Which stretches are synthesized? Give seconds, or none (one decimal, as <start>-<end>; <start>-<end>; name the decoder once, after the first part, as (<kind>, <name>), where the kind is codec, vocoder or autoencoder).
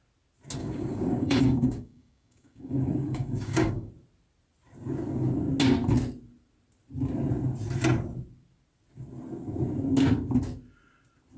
0.6-3.9 (codec, DAC)